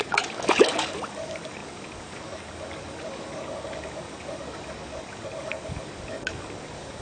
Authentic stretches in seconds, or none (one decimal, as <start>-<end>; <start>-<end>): none